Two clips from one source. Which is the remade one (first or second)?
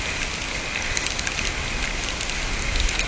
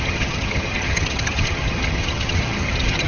second